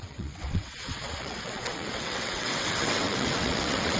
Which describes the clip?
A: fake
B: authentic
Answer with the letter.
A